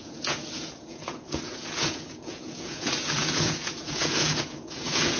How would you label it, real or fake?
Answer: fake